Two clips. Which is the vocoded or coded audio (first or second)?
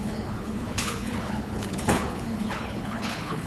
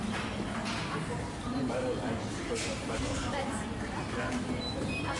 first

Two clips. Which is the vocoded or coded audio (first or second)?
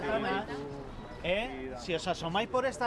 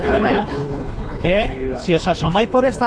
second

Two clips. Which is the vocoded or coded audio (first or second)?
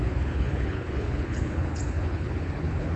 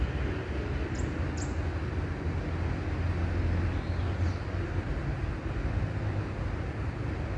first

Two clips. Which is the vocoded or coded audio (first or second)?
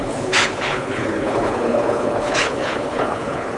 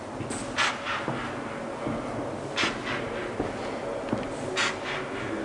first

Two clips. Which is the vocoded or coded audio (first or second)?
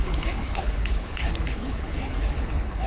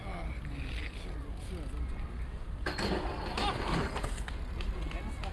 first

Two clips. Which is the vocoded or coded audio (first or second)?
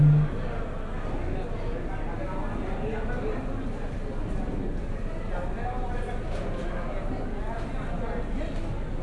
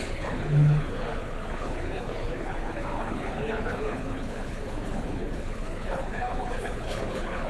second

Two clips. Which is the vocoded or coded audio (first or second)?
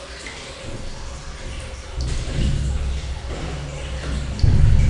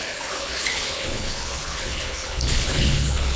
second